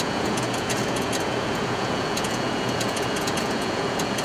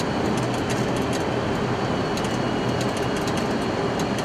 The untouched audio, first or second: second